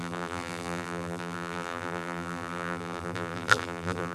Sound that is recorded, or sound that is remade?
remade